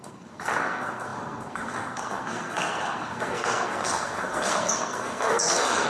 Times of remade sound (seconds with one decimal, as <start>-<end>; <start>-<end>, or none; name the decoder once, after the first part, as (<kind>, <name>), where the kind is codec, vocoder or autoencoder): 0.0-5.9 (codec, SNAC)